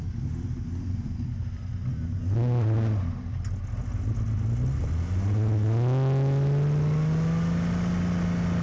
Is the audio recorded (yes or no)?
yes